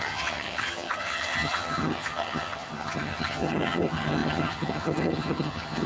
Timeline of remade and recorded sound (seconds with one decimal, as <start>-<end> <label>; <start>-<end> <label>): 0.0-5.9 remade